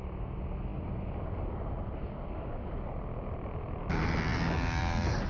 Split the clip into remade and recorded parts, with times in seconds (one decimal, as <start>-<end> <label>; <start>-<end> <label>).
0.0-5.3 recorded